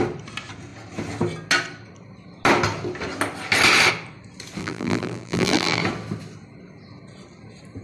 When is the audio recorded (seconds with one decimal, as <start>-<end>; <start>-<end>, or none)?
0.0-4.6; 5.8-7.8